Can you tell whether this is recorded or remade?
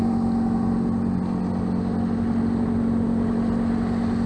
recorded